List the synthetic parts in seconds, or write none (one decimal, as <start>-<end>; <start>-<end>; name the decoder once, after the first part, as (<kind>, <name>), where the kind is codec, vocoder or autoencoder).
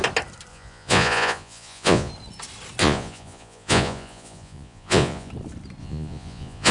0.5-2.1 (vocoder, Vocos); 2.8-5.3; 5.8-6.7